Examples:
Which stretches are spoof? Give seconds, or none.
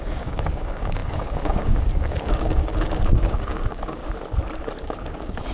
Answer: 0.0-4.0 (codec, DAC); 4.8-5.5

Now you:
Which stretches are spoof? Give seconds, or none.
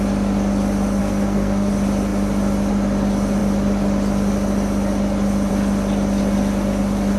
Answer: 1.0-1.7 (codec, SNAC)